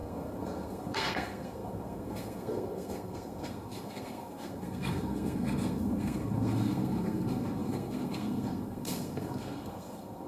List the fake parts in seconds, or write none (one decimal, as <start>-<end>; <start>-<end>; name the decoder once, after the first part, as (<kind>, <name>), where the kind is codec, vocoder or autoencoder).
0.0-10.3 (codec, SNAC)